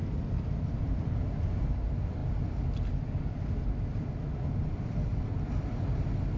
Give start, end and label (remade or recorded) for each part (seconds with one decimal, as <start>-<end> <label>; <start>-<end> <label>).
0.0-6.4 recorded

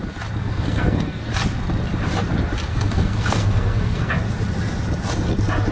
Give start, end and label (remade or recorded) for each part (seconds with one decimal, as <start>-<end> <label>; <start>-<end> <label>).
0.0-0.4 recorded; 0.4-1.3 remade; 1.3-2.7 recorded; 2.7-4.1 remade; 4.1-5.7 recorded